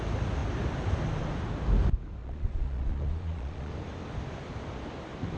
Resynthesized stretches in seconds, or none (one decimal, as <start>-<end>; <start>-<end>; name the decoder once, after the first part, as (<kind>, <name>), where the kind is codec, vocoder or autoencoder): 2.2-3.7 (vocoder, Vocos)